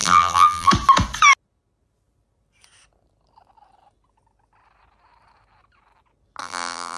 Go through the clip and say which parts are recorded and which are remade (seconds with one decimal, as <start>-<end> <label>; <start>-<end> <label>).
0.0-0.7 remade; 0.7-6.4 recorded; 6.4-7.0 remade